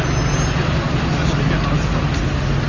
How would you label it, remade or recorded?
recorded